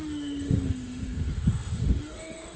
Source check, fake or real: fake